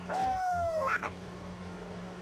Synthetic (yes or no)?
yes